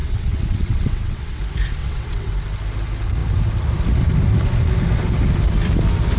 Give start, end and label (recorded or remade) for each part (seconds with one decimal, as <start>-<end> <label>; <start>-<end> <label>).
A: 0.0-1.4 remade; 1.4-1.8 recorded; 1.8-2.3 remade; 2.3-6.2 recorded